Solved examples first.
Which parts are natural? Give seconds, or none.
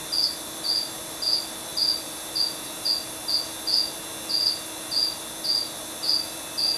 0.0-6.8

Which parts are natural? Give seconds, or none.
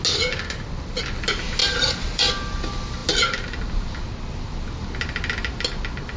0.0-1.6; 2.3-6.2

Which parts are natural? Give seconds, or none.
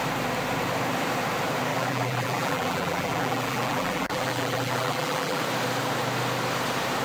0.0-1.7; 5.4-7.0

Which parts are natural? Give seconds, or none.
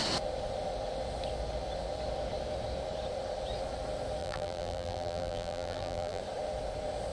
0.0-4.2; 6.2-7.1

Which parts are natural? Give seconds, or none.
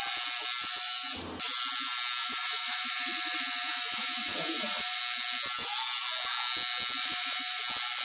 0.0-2.2; 5.0-7.0; 7.6-8.0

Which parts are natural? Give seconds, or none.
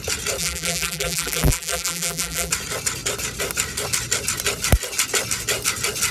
0.0-0.4; 2.5-6.1